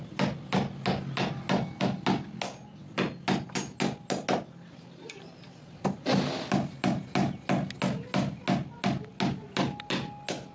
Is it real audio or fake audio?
real